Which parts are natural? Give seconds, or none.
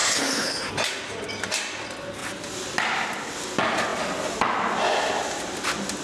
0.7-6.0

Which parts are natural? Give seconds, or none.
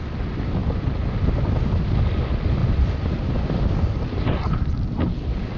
0.0-0.6; 1.9-2.6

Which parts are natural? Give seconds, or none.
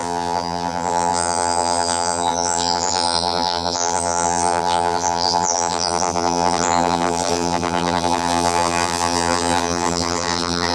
none